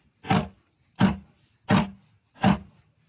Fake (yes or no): no